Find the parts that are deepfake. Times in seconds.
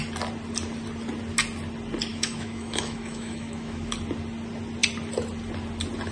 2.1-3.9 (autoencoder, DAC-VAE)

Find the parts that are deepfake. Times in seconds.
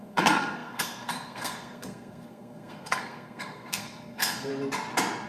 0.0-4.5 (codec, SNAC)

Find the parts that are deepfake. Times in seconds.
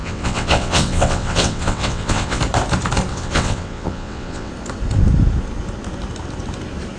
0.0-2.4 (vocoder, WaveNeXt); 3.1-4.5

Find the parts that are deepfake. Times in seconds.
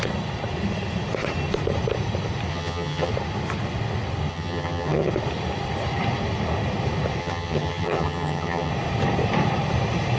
2.5-3.1 (vocoder, HiFi-GAN); 4.3-5.1; 7.2-8.7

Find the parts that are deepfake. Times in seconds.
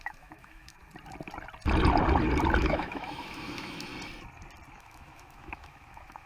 0.0-0.8 (autoencoder, DAC-VAE); 2.6-3.9; 4.7-6.3